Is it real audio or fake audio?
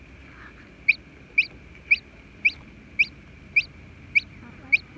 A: real